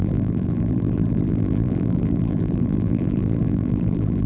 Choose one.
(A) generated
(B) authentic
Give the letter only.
A